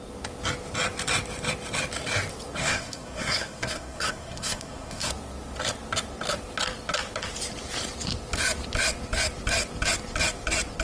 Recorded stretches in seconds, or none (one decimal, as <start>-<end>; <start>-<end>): 0.0-2.6; 5.1-10.8